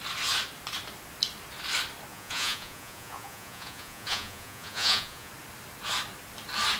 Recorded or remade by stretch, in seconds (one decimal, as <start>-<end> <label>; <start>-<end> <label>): 0.0-2.1 recorded; 2.1-5.3 remade; 5.3-6.8 recorded